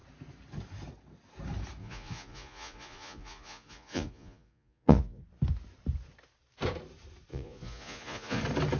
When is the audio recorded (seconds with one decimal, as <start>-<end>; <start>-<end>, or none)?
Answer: 0.0-1.8; 5.2-7.3; 8.4-8.8